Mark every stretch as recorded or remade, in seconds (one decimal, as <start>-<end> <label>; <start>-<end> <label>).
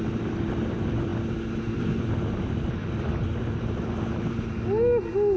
0.0-5.4 recorded